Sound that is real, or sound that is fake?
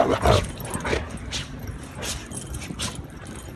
real